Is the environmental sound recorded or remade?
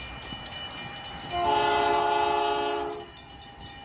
recorded